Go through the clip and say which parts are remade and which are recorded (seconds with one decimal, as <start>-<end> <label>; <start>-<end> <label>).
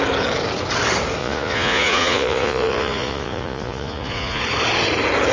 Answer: 0.0-1.2 recorded; 1.2-4.4 remade; 4.4-5.3 recorded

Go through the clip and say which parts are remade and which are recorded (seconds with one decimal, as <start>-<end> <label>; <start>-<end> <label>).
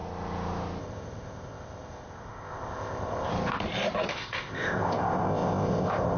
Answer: 0.0-0.8 recorded; 0.8-3.3 remade; 3.3-4.1 recorded; 4.1-6.2 remade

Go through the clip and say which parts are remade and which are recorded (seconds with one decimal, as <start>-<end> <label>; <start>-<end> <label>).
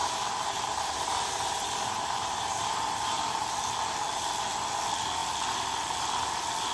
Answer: 0.0-3.2 remade; 3.2-6.7 recorded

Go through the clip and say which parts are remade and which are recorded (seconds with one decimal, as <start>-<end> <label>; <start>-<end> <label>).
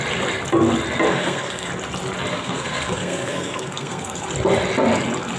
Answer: 0.0-1.1 recorded; 1.1-1.7 remade; 1.7-2.3 recorded; 2.3-4.2 remade; 4.2-5.4 recorded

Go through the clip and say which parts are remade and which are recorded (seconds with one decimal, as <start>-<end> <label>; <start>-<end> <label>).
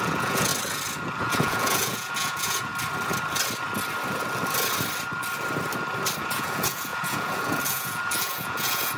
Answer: 0.0-0.5 remade; 0.5-1.2 recorded; 1.2-2.7 remade; 2.7-6.2 recorded; 6.2-9.0 remade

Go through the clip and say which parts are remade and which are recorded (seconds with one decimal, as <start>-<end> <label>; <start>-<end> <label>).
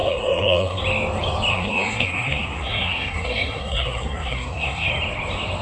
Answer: 0.0-0.8 remade; 0.8-1.5 recorded; 1.5-4.9 remade; 4.9-5.6 recorded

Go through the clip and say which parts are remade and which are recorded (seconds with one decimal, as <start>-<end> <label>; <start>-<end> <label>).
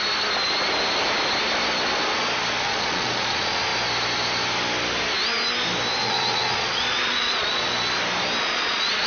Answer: 0.0-2.6 recorded; 2.6-3.7 remade; 3.7-6.0 recorded; 6.0-7.7 remade; 7.7-8.4 recorded; 8.4-9.1 remade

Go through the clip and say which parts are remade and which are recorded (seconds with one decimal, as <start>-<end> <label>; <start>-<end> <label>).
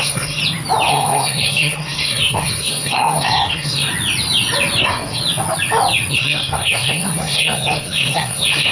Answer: 0.0-0.4 remade; 0.4-0.9 recorded; 0.9-3.9 remade; 3.9-4.8 recorded; 4.8-5.2 remade; 5.2-6.1 recorded; 6.1-8.7 remade